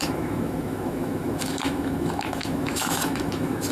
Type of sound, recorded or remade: remade